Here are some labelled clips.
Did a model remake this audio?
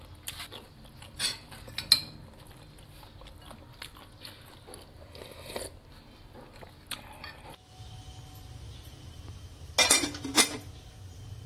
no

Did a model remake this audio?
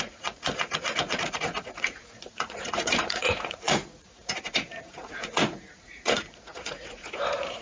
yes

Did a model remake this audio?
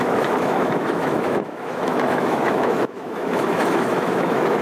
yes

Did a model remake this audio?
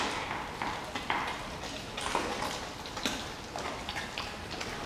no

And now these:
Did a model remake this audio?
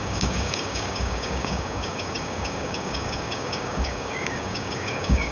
yes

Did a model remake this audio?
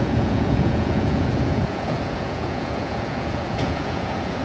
yes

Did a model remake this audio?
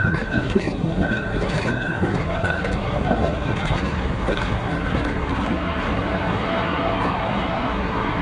yes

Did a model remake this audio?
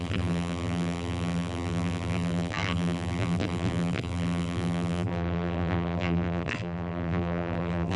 yes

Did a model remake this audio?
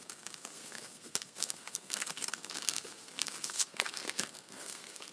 yes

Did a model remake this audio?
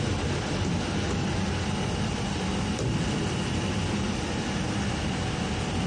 no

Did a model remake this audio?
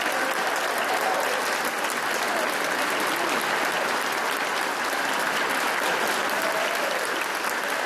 no